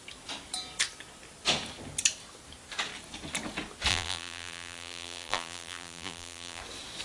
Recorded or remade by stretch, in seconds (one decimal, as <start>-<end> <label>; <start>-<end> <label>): 0.0-3.9 recorded; 3.9-6.6 remade; 6.6-7.0 recorded